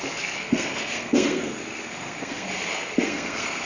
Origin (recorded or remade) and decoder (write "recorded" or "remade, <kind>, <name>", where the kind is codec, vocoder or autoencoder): remade, codec, SNAC